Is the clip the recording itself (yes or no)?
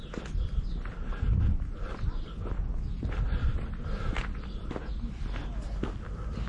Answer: yes